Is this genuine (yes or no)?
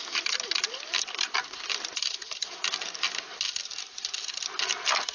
yes